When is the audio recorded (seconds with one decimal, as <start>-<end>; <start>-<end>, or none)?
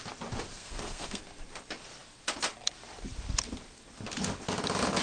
0.0-0.5; 1.2-5.0